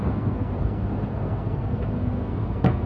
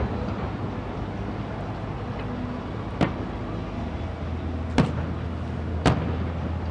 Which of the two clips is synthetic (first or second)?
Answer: first